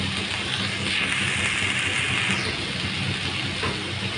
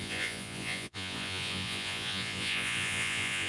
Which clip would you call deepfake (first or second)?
second